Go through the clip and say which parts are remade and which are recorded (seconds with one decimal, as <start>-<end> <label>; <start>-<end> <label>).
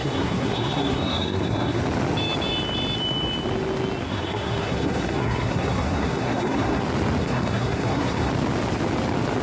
0.0-1.8 remade; 1.8-4.1 recorded; 4.1-6.8 remade; 6.8-7.2 recorded; 7.2-8.3 remade; 8.3-9.4 recorded